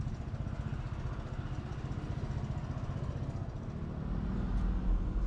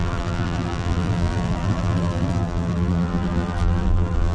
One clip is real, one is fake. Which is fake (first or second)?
second